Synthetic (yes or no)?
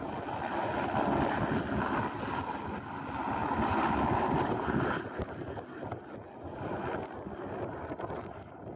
no